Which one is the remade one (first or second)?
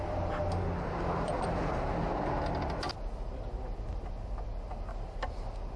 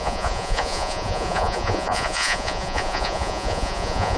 second